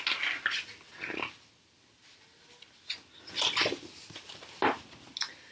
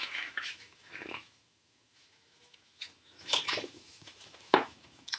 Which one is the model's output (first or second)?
second